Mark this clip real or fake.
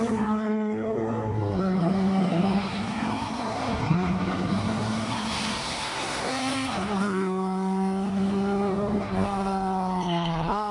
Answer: fake